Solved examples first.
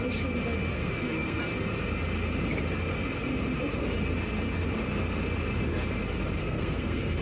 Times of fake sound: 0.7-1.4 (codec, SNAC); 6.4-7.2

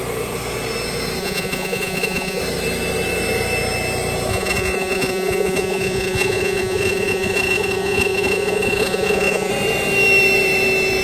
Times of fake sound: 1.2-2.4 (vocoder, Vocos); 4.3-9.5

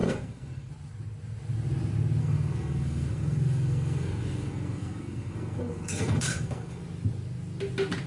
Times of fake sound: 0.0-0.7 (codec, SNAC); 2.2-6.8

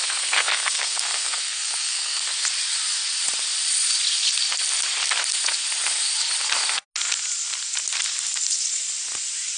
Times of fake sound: 0.0-2.2 (codec, SNAC)